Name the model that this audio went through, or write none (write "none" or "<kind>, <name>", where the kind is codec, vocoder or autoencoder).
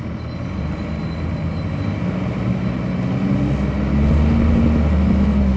none